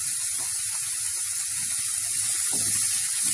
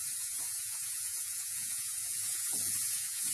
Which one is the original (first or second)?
first